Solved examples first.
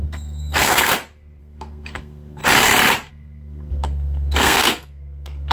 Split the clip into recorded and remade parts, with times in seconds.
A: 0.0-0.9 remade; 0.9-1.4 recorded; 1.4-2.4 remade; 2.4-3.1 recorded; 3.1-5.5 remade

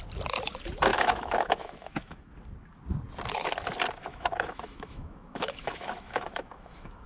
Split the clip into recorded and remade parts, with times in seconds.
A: 0.0-0.9 recorded; 0.9-2.3 remade; 2.3-4.1 recorded; 4.1-7.1 remade

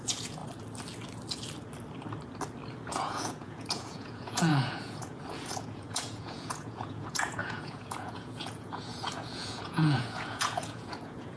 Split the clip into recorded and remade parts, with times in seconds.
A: 0.0-0.4 remade; 0.4-2.9 recorded; 2.9-11.4 remade

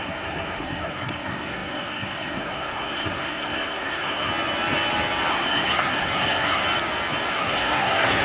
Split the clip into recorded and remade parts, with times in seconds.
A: 0.0-4.3 remade; 4.3-5.3 recorded; 5.3-6.6 remade; 6.6-7.3 recorded; 7.3-8.2 remade

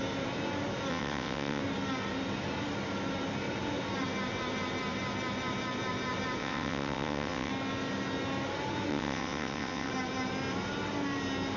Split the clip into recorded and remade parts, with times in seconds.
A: 0.0-0.9 recorded; 0.9-1.6 remade; 1.6-6.4 recorded; 6.4-7.5 remade; 7.5-8.9 recorded; 8.9-9.9 remade; 9.9-11.6 recorded

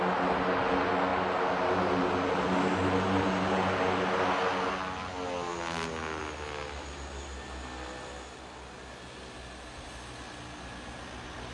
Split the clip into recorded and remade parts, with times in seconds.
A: 0.0-11.5 recorded

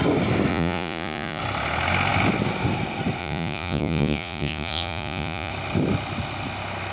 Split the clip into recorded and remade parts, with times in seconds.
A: 0.0-0.5 recorded; 0.5-1.4 remade; 1.4-3.2 recorded; 3.2-5.5 remade; 5.5-6.9 recorded

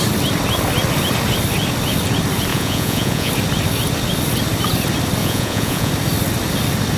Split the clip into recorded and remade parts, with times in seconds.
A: 0.0-2.5 recorded; 2.5-3.3 remade; 3.3-5.2 recorded; 5.2-5.9 remade; 5.9-7.0 recorded